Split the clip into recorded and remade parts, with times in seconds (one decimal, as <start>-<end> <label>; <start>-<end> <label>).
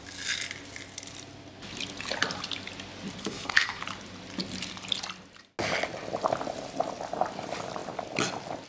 0.0-3.2 recorded; 3.2-3.8 remade; 3.8-8.7 recorded